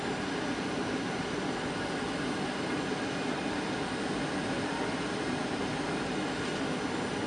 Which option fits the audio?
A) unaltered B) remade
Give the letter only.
A